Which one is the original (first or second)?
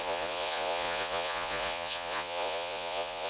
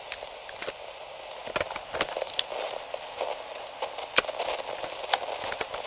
second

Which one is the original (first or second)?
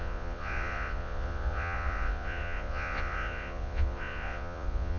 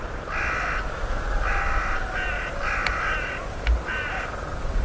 second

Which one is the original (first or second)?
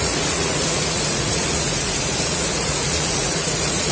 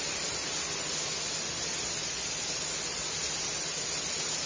second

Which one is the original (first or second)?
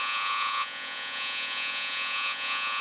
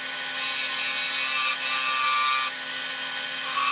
second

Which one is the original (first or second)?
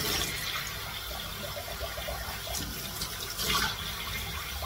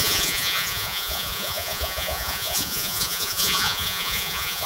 first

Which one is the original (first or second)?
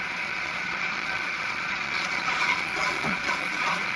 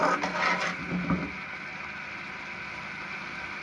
second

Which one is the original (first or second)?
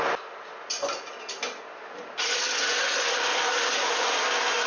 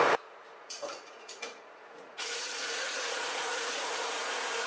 first